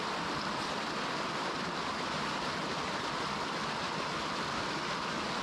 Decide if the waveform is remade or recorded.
recorded